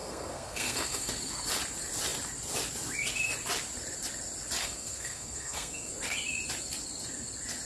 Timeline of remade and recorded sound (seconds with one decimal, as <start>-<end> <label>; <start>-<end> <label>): 0.0-1.1 remade; 1.1-4.6 recorded; 4.6-5.9 remade; 5.9-7.6 recorded